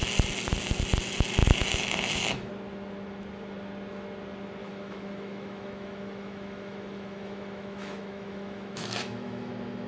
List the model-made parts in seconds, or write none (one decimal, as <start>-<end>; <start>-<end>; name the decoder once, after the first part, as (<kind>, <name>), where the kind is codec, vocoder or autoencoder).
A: 1.4-2.5 (autoencoder, DAC-VAE); 4.6-9.5